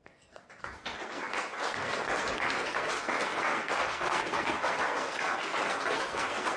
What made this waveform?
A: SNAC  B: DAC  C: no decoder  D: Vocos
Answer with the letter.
A